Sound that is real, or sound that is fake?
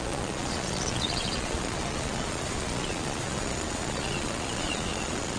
fake